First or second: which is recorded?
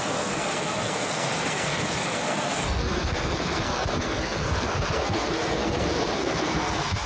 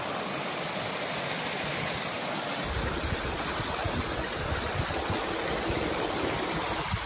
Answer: second